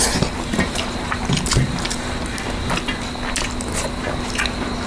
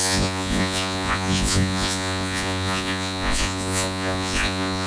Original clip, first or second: first